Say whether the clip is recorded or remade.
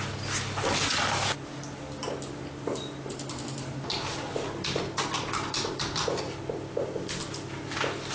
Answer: recorded